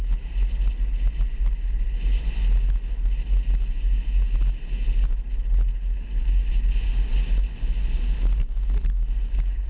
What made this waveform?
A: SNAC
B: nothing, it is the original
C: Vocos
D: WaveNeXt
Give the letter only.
B